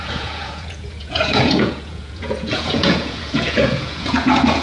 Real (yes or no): no